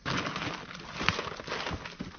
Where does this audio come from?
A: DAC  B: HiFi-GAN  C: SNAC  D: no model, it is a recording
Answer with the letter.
D